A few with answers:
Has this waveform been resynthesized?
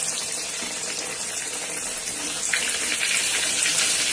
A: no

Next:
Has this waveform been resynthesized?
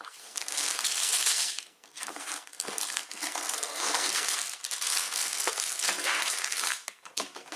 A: yes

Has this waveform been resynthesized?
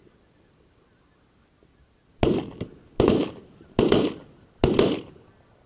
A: no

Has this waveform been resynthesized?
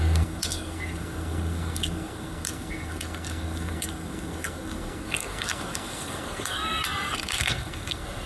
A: yes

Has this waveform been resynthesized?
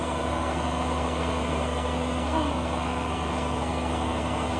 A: yes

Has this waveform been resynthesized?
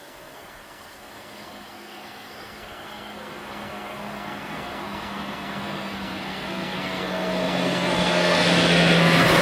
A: yes